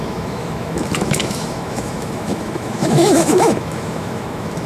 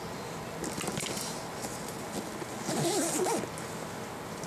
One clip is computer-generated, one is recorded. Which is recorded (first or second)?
second